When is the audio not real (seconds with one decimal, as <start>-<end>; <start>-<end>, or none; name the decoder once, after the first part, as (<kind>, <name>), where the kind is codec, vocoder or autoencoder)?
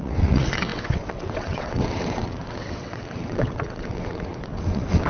0.0-5.1 (vocoder, WaveNeXt)